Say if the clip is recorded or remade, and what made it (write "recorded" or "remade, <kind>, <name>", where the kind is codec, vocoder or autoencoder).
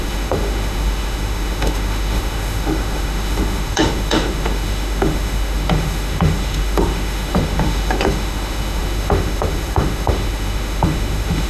remade, autoencoder, DAC-VAE